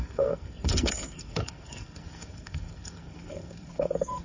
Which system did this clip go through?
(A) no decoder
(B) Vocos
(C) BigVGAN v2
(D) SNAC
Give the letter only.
D